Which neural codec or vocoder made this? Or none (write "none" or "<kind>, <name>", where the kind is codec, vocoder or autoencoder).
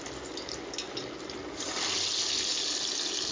none